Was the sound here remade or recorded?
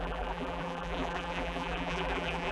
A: remade